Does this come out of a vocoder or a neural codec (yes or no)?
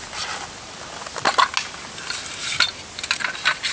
no